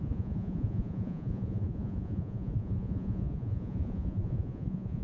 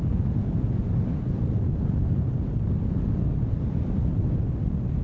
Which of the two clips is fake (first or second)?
first